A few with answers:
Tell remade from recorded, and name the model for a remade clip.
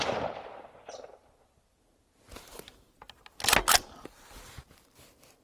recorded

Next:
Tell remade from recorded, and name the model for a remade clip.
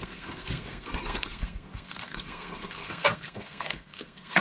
remade, codec, SNAC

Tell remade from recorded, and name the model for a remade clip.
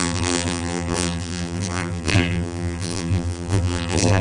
remade, vocoder, BigVGAN v2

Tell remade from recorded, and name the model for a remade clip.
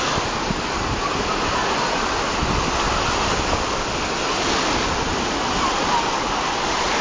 recorded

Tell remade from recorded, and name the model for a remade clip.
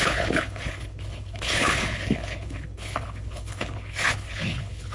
remade, codec, HILCodec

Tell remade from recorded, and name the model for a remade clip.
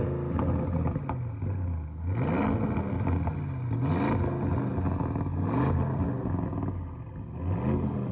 recorded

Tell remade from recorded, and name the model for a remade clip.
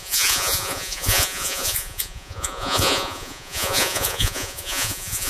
remade, vocoder, Vocos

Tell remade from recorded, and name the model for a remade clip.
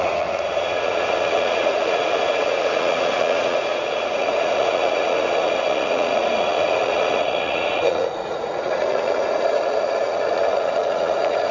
remade, vocoder, Vocos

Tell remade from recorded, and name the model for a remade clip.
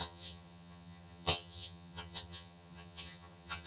remade, vocoder, HiFi-GAN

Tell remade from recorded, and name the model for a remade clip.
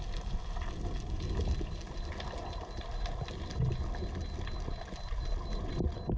recorded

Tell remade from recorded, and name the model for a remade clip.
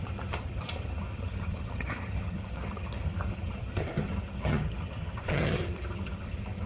remade, vocoder, HiFi-GAN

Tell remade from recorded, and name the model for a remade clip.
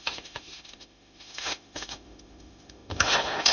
remade, autoencoder, DAC-VAE